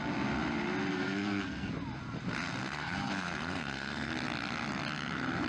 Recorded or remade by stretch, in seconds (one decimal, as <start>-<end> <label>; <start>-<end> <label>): 0.0-0.9 recorded; 0.9-1.7 remade; 1.7-2.6 recorded; 2.6-4.1 remade; 4.1-5.5 recorded